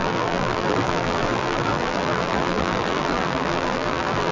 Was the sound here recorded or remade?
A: remade